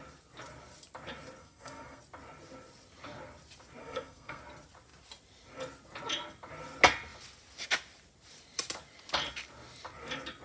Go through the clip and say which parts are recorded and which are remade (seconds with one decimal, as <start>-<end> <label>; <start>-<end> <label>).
0.0-1.4 recorded; 1.4-2.0 remade; 2.0-3.8 recorded; 3.8-4.4 remade; 4.4-10.4 recorded